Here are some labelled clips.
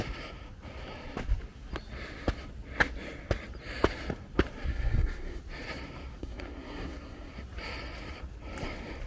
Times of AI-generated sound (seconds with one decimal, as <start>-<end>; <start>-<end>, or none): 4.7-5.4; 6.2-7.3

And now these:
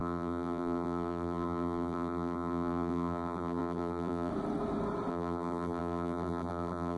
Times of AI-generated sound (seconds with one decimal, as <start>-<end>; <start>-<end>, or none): 0.0-4.3; 5.1-7.0

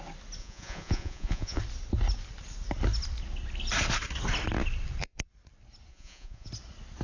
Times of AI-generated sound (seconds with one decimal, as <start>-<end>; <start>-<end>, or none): 0.4-1.6; 5.9-6.5